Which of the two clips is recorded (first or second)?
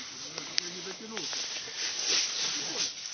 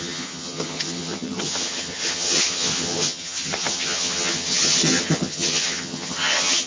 first